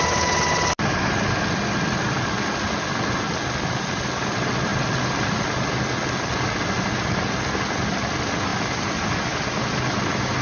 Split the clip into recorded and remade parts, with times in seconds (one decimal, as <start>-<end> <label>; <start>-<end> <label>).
0.0-4.7 recorded; 4.7-5.4 remade; 5.4-8.5 recorded; 8.5-9.1 remade; 9.1-10.4 recorded